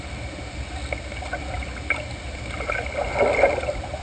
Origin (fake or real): real